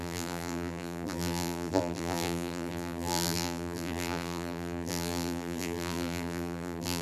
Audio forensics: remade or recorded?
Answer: remade